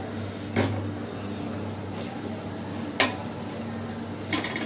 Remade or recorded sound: recorded